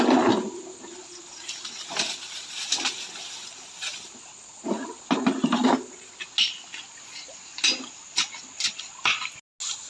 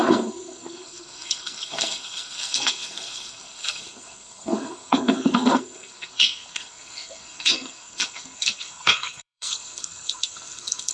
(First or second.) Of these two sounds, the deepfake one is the second